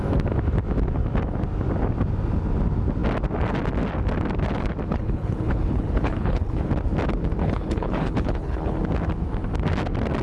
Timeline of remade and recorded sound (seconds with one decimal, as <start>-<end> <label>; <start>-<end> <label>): 0.0-4.9 recorded; 4.9-6.7 remade; 6.7-7.4 recorded; 7.4-8.8 remade; 8.8-10.2 recorded